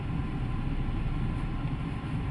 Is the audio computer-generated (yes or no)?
no